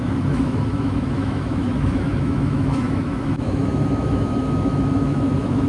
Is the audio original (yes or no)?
no